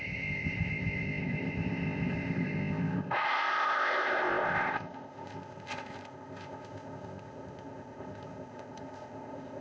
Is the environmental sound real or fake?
fake